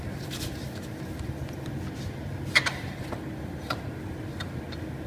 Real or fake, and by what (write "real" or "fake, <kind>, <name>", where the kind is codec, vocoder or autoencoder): real